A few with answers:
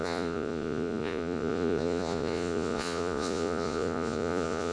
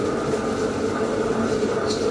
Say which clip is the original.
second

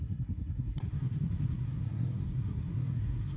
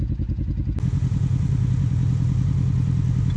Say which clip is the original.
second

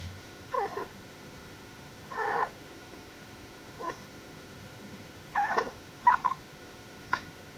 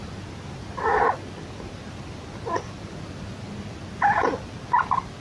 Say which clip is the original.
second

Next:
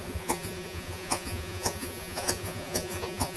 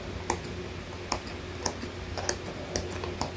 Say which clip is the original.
second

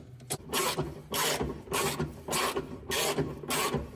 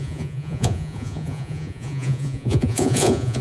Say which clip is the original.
first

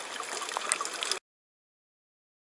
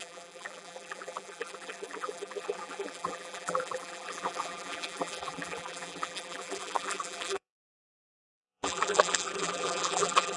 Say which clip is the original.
first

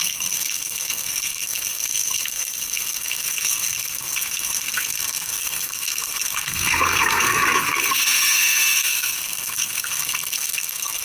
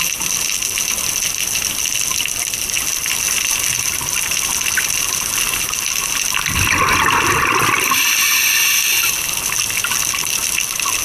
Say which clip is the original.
second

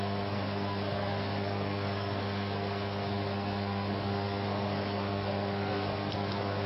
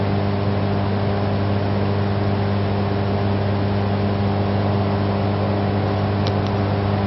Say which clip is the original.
second